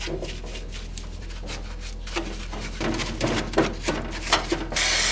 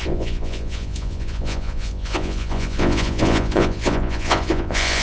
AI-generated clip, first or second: second